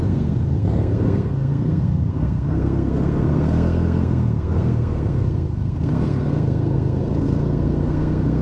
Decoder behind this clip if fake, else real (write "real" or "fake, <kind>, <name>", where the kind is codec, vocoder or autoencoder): fake, codec, SNAC